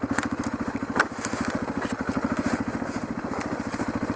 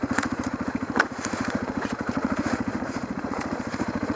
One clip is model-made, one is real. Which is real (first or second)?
first